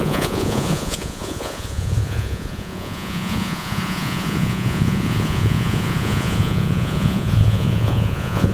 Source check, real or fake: fake